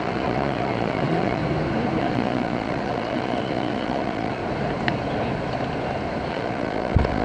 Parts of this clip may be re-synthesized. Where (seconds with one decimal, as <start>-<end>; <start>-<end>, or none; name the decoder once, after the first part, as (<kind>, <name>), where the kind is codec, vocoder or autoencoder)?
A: 0.0-1.4 (vocoder, Vocos); 2.0-4.4; 6.3-7.2